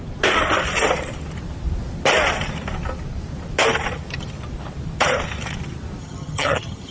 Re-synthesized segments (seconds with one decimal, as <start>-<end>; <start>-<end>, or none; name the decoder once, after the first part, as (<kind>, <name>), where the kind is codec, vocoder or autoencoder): 6.0-6.9 (vocoder, HiFi-GAN)